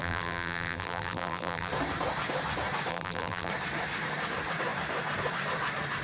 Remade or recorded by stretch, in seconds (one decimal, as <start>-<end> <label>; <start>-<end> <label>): 0.0-1.7 remade; 1.7-2.9 recorded; 2.9-3.5 remade; 3.5-6.0 recorded